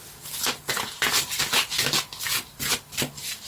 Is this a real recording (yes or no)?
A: yes